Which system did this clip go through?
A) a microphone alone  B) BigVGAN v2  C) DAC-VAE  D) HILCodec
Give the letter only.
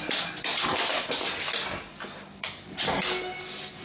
A